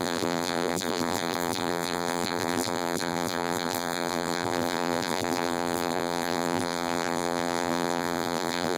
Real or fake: fake